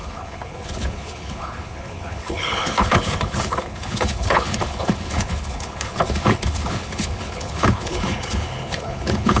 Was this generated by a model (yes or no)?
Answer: yes